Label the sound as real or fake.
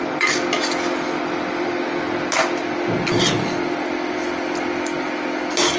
real